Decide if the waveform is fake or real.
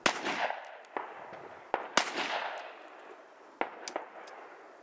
real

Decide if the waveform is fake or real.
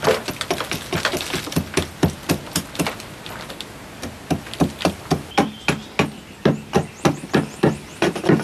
real